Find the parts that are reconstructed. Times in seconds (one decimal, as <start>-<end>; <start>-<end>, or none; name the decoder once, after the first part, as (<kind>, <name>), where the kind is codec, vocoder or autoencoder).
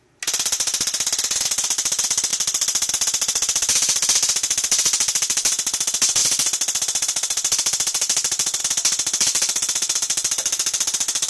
none